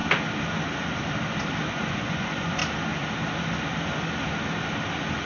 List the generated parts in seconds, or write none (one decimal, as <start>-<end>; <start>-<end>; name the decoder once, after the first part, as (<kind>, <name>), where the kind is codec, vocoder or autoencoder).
1.7-2.6 (vocoder, Vocos)

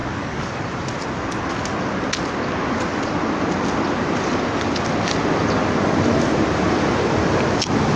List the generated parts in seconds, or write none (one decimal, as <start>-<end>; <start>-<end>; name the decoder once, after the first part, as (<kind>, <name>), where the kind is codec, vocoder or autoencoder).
0.0-0.5 (codec, DAC)